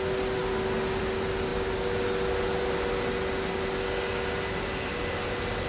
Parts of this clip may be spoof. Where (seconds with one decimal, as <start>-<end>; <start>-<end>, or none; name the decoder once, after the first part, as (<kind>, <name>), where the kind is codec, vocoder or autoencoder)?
none